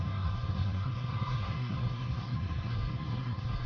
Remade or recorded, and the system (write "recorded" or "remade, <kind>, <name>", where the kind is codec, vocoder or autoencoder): remade, codec, SNAC